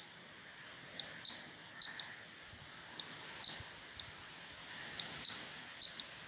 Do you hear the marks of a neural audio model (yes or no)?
no